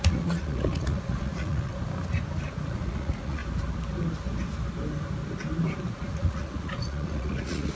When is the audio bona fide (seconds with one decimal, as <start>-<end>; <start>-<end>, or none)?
1.7-2.5; 3.4-5.9